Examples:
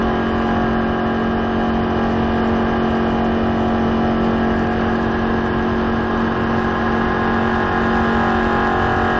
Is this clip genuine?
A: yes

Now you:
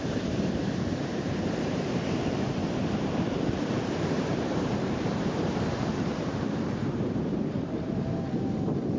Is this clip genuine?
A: no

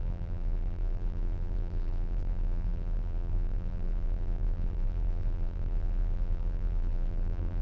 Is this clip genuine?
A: no